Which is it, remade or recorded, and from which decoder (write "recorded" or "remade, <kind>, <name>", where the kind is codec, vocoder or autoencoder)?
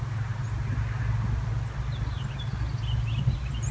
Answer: recorded